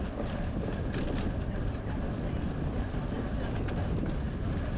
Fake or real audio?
real